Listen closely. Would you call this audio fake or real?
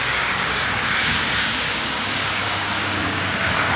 fake